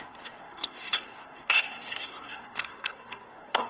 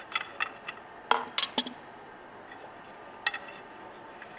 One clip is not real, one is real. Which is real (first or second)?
second